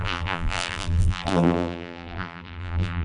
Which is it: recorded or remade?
remade